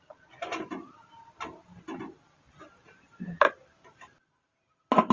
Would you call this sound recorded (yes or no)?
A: yes